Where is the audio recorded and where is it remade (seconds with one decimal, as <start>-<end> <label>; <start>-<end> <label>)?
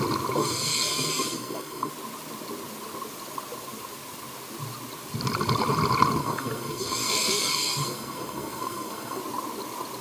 0.0-0.4 recorded; 0.4-1.9 remade; 1.9-6.2 recorded; 6.2-9.2 remade; 9.2-10.0 recorded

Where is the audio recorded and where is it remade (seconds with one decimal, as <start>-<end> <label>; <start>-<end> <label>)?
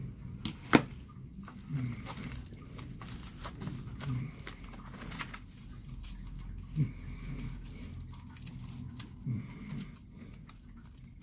0.0-11.2 recorded